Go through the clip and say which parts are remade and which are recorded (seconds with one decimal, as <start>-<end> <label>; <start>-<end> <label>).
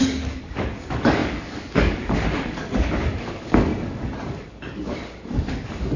0.0-6.0 remade